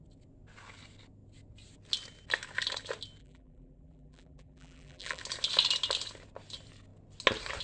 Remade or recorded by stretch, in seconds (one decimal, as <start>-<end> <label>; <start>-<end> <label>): 0.0-3.2 recorded; 3.2-5.2 remade; 5.2-7.6 recorded